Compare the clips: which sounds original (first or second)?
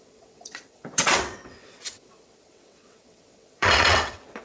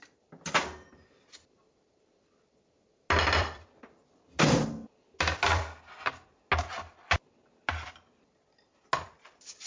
second